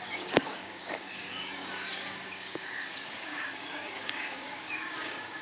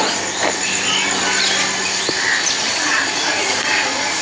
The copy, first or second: first